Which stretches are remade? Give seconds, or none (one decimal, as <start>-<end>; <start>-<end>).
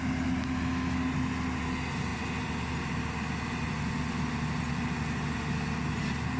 none